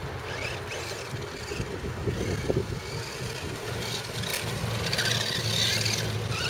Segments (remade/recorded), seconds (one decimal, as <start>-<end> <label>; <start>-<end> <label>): 0.0-6.5 recorded